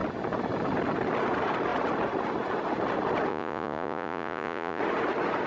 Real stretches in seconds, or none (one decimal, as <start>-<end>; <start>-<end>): 0.0-3.3; 4.8-5.5